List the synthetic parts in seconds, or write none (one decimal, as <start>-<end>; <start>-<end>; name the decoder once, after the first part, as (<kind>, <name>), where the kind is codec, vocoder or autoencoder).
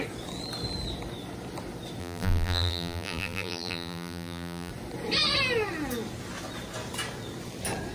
2.0-4.7 (vocoder, BigVGAN v2)